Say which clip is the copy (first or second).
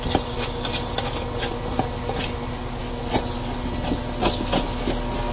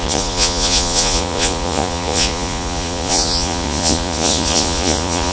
second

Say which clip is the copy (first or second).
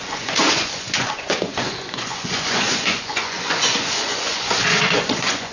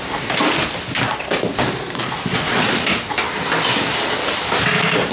first